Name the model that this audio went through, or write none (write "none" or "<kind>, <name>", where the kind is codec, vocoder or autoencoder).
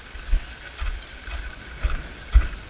none